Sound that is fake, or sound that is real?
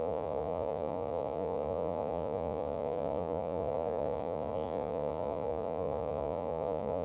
fake